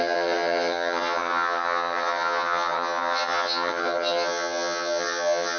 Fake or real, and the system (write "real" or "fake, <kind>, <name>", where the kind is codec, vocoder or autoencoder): fake, vocoder, HiFi-GAN